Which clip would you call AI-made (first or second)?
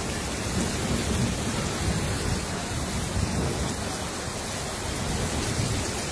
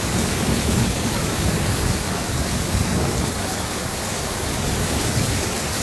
second